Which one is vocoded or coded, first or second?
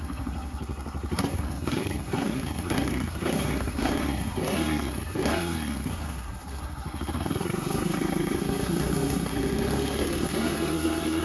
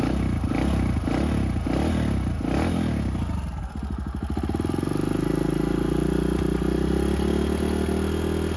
first